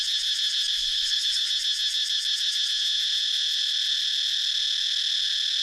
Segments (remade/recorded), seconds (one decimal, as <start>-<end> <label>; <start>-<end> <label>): 0.0-0.8 recorded; 0.8-1.5 remade; 1.5-5.6 recorded